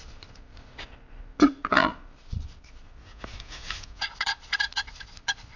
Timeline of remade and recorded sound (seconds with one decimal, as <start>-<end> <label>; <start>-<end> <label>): 0.0-3.0 remade; 3.0-4.0 recorded; 4.0-5.6 remade